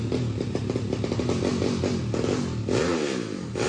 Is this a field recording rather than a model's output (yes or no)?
yes